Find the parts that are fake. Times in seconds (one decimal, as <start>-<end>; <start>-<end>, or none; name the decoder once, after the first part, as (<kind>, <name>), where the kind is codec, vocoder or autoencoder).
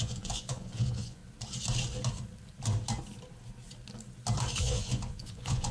0.0-1.2 (vocoder, Vocos); 4.6-5.7